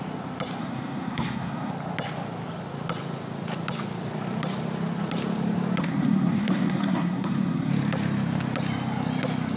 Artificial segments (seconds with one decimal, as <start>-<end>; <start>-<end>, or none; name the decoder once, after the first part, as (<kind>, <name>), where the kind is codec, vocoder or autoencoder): 0.6-1.7 (codec, SNAC); 5.8-7.7